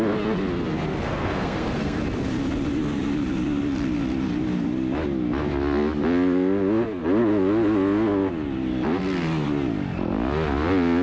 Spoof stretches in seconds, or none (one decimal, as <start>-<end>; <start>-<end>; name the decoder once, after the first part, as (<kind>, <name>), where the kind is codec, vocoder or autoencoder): 0.9-2.0 (codec, SNAC)